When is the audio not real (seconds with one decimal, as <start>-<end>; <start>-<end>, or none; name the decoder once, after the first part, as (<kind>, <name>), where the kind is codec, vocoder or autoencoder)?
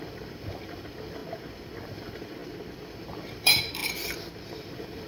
0.0-1.2 (vocoder, BigVGAN v2); 1.8-2.4; 3.0-3.8; 4.6-5.1